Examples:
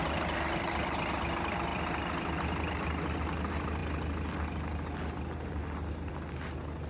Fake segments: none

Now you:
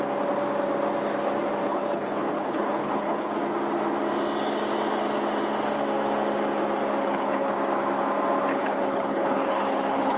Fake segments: 1.6-3.3; 7.0-7.5; 8.5-10.2

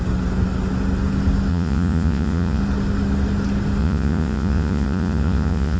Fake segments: 1.5-2.6; 3.8-5.8

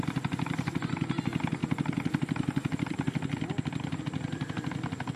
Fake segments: 1.6-4.0

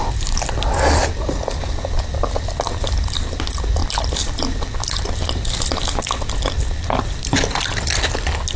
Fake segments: none

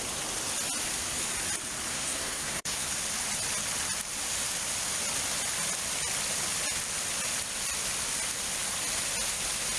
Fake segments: 1.9-2.9

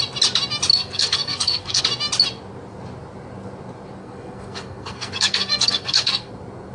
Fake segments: 0.7-1.8; 4.0-6.3

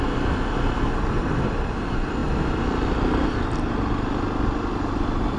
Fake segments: none